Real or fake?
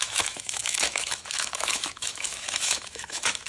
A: fake